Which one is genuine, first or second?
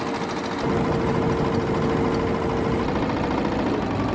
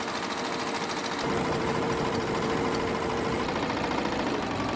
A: first